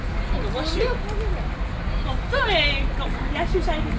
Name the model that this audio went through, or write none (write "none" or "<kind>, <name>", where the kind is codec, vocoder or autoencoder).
none